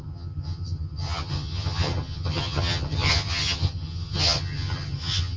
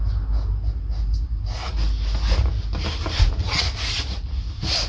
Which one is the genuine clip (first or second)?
second